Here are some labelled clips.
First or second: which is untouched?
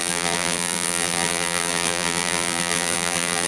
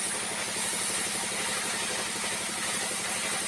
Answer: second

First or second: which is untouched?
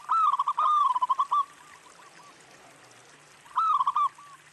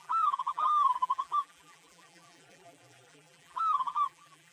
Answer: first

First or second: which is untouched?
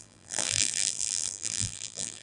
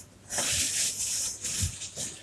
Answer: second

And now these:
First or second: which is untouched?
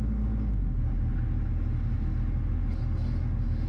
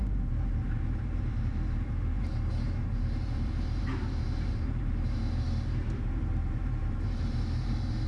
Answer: first